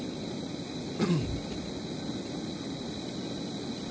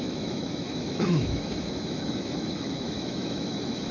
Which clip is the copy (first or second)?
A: second